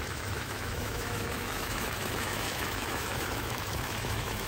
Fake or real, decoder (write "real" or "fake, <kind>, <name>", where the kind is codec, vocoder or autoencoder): fake, autoencoder, DAC-VAE